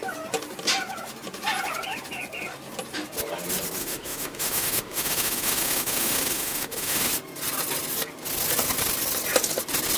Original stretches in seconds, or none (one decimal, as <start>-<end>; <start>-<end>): 0.0-3.8; 7.1-10.0